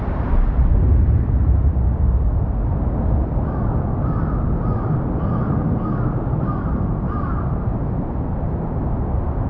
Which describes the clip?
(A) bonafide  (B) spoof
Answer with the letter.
A